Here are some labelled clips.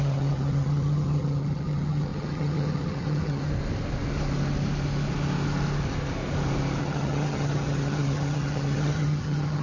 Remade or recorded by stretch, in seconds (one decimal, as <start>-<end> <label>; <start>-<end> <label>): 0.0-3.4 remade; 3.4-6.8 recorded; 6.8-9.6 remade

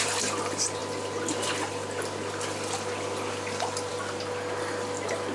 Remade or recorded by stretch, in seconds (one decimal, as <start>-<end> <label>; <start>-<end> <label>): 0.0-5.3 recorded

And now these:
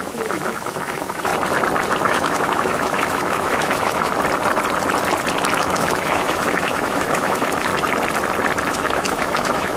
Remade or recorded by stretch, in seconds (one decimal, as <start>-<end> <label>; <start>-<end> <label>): 0.0-1.3 remade; 1.3-2.0 recorded; 2.0-4.1 remade; 4.1-5.6 recorded; 5.6-7.7 remade; 7.7-8.7 recorded; 8.7-9.8 remade